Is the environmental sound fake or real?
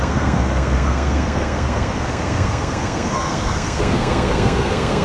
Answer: fake